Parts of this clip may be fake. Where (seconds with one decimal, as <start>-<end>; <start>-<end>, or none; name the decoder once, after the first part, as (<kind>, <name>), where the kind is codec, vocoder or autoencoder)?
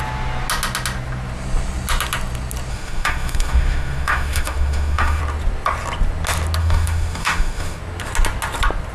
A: 2.7-5.2 (autoencoder, DAC-VAE); 6.6-7.8